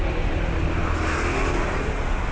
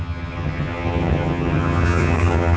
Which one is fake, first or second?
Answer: second